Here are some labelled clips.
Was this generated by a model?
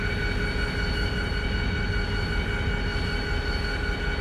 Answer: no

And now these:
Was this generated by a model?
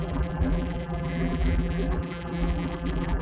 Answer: yes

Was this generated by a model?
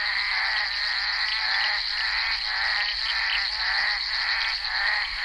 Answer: no